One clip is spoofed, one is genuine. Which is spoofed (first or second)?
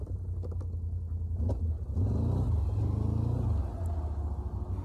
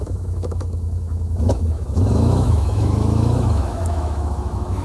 second